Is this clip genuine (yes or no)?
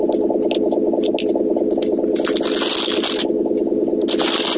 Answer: yes